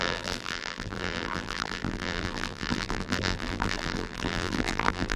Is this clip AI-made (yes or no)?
yes